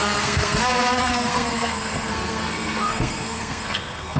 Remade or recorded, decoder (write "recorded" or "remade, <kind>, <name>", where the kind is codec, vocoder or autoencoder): remade, codec, SNAC